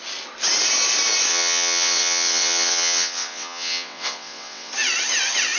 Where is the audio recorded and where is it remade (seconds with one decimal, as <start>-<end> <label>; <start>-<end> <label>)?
0.0-1.3 recorded; 1.3-4.7 remade; 4.7-5.6 recorded